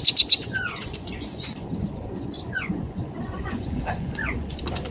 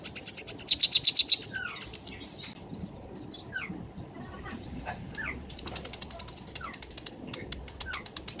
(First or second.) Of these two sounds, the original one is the second